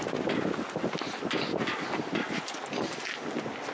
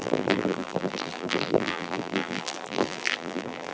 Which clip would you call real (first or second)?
first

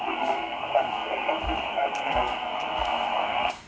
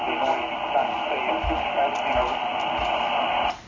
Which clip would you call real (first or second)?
second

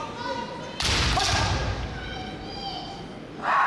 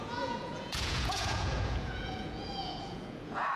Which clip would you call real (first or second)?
first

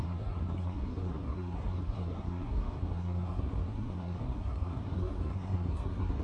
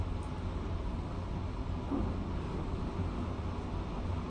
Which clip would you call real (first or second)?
second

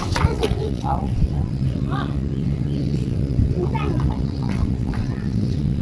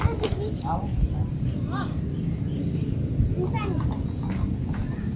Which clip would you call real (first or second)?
second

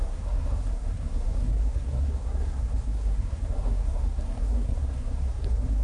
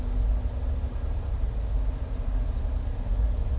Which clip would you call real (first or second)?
second